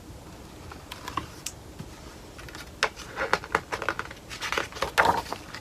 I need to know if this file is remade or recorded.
recorded